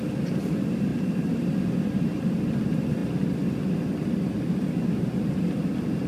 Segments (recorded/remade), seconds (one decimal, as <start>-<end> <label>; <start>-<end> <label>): 0.0-0.9 recorded; 0.9-1.5 remade; 1.5-6.1 recorded